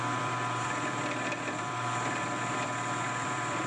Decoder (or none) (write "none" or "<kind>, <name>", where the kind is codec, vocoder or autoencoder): vocoder, BigVGAN v2